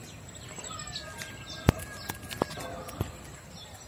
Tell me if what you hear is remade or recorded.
recorded